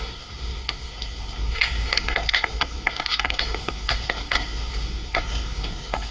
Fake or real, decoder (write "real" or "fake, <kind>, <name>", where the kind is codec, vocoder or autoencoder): fake, codec, SNAC